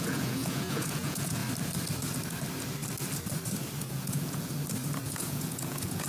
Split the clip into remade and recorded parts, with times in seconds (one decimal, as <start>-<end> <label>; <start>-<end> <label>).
0.0-1.4 remade; 1.4-3.8 recorded; 3.8-4.5 remade; 4.5-5.0 recorded; 5.0-6.1 remade